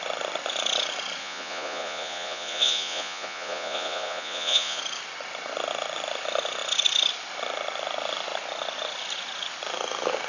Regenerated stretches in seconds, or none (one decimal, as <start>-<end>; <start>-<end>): 1.2-4.8